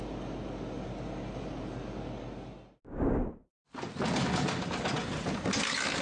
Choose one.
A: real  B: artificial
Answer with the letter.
A